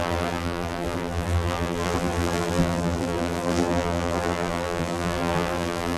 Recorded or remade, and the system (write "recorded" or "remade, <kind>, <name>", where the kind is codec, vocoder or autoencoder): remade, vocoder, BigVGAN v2